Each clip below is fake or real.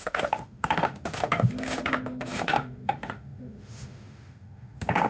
fake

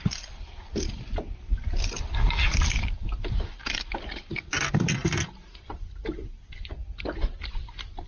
real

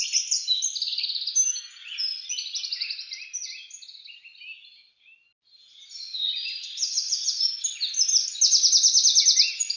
real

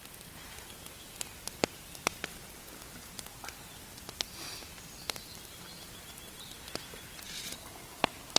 real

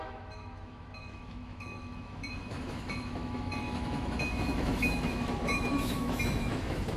fake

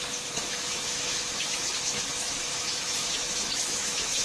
fake